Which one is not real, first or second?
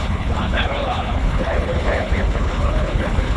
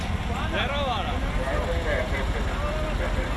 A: first